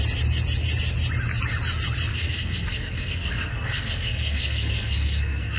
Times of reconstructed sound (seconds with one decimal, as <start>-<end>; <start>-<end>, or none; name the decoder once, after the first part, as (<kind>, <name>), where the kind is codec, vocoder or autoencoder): 2.1-5.6 (codec, SNAC)

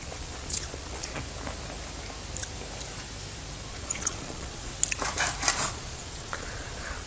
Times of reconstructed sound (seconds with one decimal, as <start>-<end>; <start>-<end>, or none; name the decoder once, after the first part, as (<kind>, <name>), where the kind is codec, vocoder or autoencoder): 0.0-1.2 (vocoder, Vocos); 3.7-4.7; 5.5-7.1

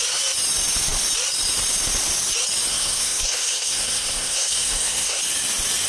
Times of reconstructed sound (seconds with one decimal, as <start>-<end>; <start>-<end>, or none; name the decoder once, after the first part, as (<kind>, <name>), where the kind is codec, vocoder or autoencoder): 2.7-5.2 (codec, SNAC)

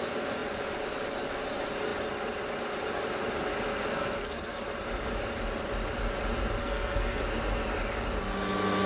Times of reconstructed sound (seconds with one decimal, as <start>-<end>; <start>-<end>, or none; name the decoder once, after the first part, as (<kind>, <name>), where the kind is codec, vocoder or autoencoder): 3.9-4.6 (codec, SNAC); 6.6-7.2

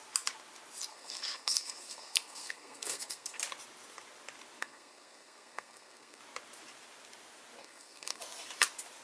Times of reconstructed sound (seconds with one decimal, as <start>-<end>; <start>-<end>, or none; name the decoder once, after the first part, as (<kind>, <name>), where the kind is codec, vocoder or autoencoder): 0.9-3.4 (codec, SNAC); 4.6-6.2; 7.6-8.2

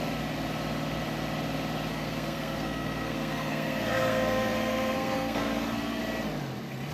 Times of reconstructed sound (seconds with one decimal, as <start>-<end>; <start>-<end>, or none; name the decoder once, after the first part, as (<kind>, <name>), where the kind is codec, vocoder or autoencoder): 1.9-6.0 (codec, SNAC)

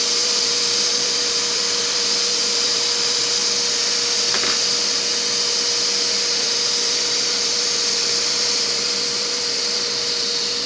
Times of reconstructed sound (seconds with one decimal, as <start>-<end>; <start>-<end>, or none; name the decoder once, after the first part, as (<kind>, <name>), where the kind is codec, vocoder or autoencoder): 0.0-3.4 (vocoder, BigVGAN v2); 6.4-10.7

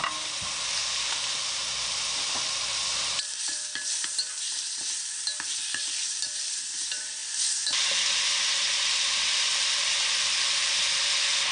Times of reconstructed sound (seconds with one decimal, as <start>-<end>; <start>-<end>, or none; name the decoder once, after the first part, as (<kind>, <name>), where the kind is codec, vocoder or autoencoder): 0.0-7.2 (vocoder, BigVGAN v2); 8.4-11.5